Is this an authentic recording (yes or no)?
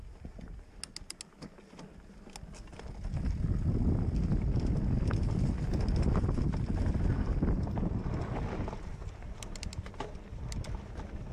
yes